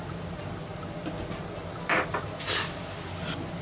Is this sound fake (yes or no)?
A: no